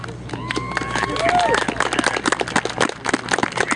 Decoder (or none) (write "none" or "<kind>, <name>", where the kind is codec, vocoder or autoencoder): none